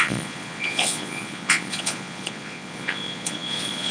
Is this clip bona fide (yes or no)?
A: no